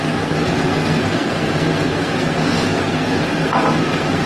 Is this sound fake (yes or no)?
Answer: yes